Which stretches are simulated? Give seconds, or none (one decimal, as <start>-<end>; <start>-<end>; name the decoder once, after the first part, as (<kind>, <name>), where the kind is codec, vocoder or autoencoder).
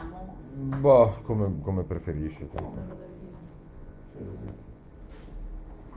2.4-4.9 (vocoder, Vocos)